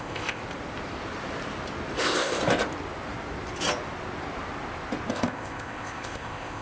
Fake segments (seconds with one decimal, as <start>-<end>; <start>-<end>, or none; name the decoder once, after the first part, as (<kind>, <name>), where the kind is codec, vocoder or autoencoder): 0.0-0.4 (codec, ZipCodec); 2.0-2.4; 5.1-6.6

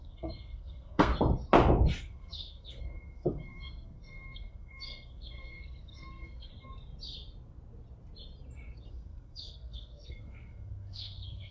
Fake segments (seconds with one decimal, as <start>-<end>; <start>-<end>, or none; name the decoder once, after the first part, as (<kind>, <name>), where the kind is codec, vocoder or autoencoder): 0.0-1.1 (codec, SNAC); 2.0-6.5; 8.9-11.5